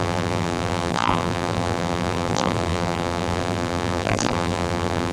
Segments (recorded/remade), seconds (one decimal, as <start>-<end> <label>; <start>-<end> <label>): 0.0-5.1 remade